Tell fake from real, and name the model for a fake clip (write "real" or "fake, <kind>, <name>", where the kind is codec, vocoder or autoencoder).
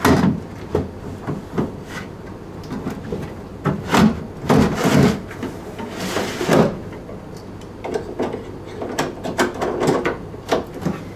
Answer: real